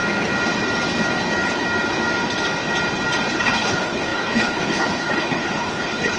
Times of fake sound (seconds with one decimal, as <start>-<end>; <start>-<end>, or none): 3.3-6.2